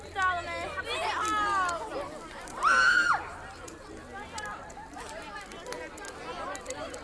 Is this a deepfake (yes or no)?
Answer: no